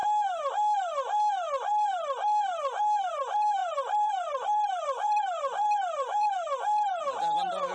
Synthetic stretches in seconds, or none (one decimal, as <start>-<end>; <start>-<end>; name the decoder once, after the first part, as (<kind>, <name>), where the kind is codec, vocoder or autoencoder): 3.6-6.3 (vocoder, BigVGAN v2)